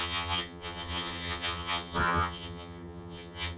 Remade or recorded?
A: remade